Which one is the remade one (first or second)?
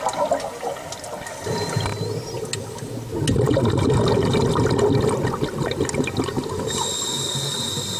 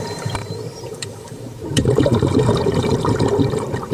second